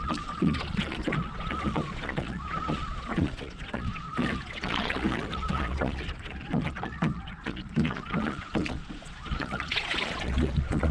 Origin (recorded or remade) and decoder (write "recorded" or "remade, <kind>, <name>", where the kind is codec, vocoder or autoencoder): remade, vocoder, Vocos